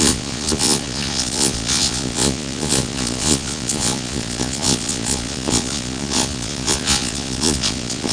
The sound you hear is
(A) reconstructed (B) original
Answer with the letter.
A